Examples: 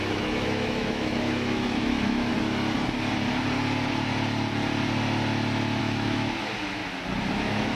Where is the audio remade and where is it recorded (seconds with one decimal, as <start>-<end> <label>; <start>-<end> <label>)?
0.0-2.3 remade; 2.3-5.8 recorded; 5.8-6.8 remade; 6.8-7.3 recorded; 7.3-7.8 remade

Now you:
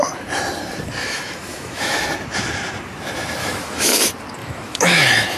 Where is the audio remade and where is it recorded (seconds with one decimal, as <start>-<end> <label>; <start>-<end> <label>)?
0.0-1.0 recorded; 1.0-2.0 remade; 2.0-3.4 recorded; 3.4-4.0 remade; 4.0-4.4 recorded; 4.4-5.4 remade

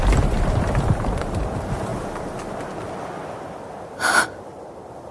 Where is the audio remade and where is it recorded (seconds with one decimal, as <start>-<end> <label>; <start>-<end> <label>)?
0.0-1.9 remade; 1.9-5.1 recorded

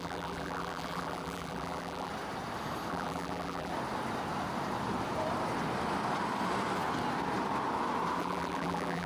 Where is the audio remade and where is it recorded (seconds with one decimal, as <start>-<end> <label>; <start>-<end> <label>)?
0.0-2.1 remade; 2.1-2.9 recorded; 2.9-3.7 remade; 3.7-8.2 recorded; 8.2-9.1 remade